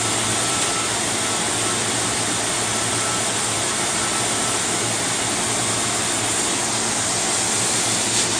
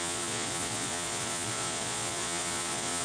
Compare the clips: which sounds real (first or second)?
first